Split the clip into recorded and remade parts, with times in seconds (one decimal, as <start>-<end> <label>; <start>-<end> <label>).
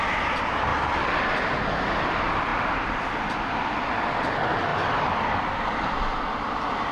0.0-2.5 recorded; 2.5-3.7 remade; 3.7-4.7 recorded; 4.7-5.7 remade; 5.7-6.9 recorded